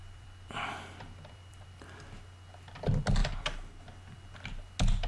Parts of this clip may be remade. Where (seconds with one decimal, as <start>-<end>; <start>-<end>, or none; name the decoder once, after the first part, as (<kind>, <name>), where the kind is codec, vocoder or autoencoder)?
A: 0.0-1.8 (vocoder, BigVGAN v2)